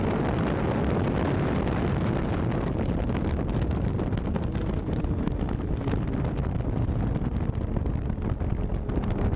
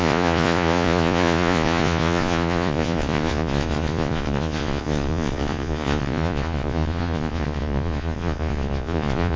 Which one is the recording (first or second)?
first